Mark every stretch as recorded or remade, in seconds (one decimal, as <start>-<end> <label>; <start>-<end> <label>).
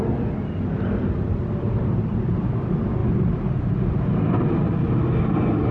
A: 0.0-5.7 recorded